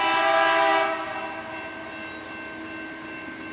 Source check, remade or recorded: recorded